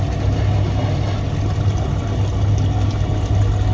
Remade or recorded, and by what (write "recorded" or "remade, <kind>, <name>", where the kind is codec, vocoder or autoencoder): recorded